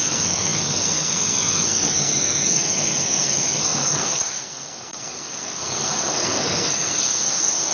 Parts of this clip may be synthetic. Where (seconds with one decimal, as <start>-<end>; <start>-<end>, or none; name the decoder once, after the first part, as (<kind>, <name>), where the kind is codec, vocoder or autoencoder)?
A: 0.0-7.7 (codec, SNAC)